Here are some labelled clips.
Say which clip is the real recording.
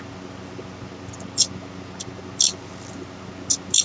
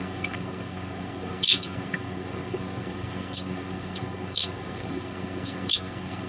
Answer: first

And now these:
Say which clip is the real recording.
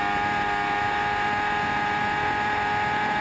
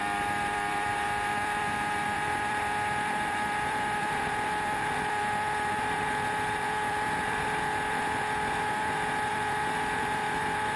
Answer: first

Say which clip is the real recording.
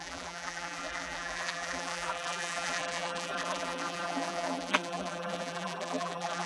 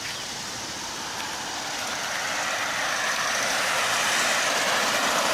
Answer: second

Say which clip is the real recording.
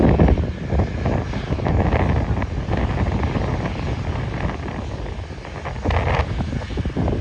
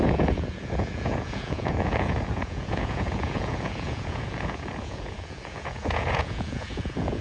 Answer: first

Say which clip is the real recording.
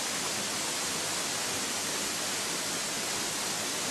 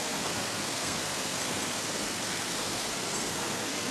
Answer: first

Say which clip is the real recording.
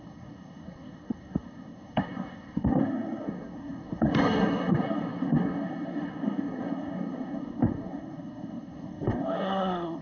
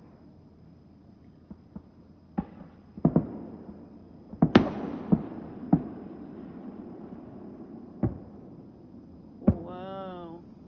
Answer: second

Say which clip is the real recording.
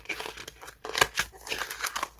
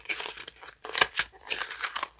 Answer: first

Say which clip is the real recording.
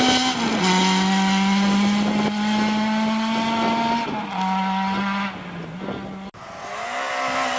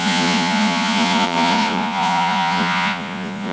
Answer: first